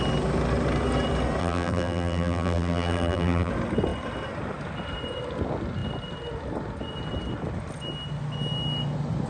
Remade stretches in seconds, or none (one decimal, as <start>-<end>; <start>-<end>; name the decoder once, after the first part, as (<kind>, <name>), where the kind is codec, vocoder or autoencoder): 1.4-3.5 (vocoder, BigVGAN v2)